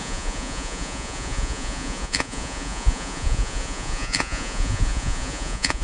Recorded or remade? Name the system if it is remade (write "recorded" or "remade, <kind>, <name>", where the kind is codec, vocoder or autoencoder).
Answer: remade, vocoder, Vocos